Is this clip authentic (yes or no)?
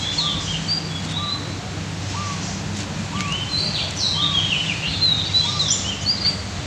yes